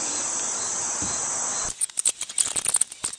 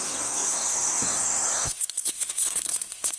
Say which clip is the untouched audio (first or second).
first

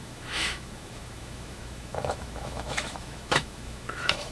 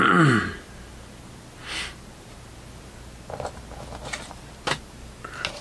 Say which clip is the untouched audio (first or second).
second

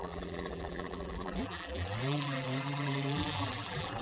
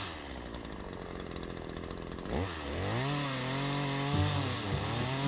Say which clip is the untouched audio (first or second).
second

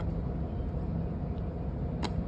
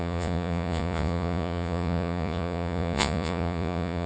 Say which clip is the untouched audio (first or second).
first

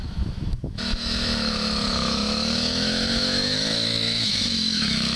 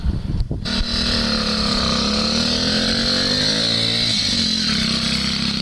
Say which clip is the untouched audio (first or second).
second